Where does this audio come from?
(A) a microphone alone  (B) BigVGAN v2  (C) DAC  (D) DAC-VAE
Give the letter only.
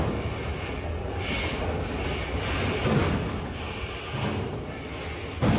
A